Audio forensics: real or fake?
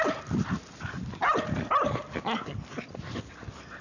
real